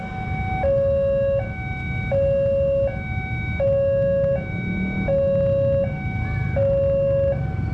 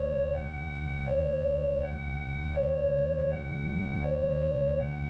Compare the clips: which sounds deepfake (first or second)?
second